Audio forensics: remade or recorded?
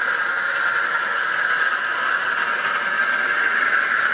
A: recorded